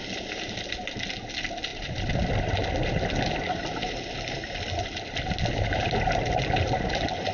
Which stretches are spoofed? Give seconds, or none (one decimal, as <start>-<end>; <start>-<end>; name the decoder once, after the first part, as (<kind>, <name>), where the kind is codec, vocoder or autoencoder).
none